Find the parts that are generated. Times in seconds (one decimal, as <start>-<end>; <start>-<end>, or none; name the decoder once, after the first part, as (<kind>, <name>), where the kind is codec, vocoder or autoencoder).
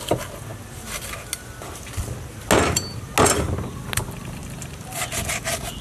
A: none